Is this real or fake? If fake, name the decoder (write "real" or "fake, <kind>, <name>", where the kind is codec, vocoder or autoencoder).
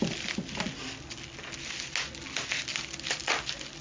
real